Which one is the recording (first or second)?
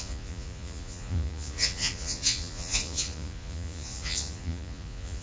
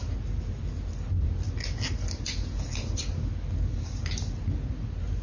second